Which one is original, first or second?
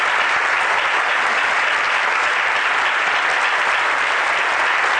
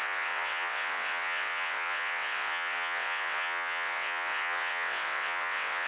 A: first